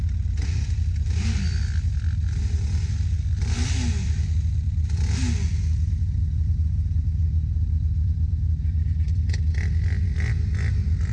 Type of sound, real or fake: real